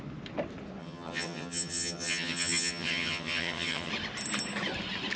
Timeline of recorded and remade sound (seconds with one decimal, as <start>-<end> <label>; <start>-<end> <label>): 0.0-0.8 recorded; 0.8-3.9 remade; 3.9-5.2 recorded